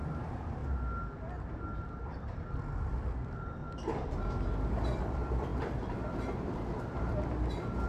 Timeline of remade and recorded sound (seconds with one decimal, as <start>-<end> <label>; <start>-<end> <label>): 0.0-0.6 remade; 0.6-1.5 recorded; 1.5-3.6 remade; 3.6-5.0 recorded; 5.0-7.9 remade